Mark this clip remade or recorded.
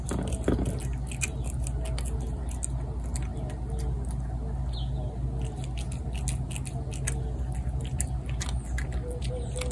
recorded